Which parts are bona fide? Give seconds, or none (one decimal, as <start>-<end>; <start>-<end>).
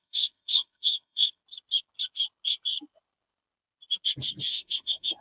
1.4-4.5